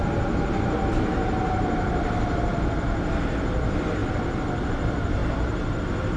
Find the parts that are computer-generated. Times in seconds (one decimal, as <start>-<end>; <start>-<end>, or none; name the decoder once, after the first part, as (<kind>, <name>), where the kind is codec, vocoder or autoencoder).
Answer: 5.2-5.8 (vocoder, BigVGAN v2)